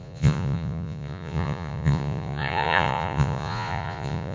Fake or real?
fake